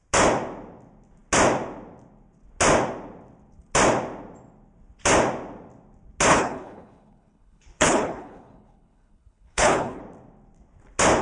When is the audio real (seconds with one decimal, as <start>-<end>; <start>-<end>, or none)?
0.0-6.3; 10.0-11.2